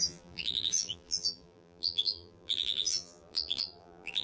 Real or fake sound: fake